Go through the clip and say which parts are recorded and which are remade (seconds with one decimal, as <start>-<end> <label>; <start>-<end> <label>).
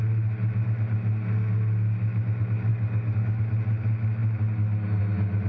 0.0-2.7 recorded; 2.7-3.4 remade; 3.4-5.5 recorded